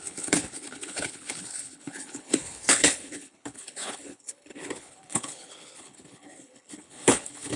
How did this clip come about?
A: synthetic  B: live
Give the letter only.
A